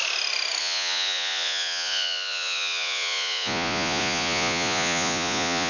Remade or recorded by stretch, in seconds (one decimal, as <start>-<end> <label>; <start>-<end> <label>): 0.0-0.6 recorded; 0.6-5.7 remade